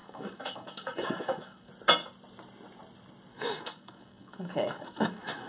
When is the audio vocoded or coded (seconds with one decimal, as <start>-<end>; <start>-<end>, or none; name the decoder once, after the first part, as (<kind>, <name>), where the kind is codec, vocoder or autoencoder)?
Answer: 0.0-1.7 (autoencoder, DAC-VAE); 3.3-5.5